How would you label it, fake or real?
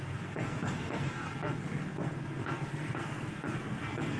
fake